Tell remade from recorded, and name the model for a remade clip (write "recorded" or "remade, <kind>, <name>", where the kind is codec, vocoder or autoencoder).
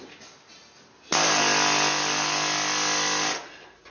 recorded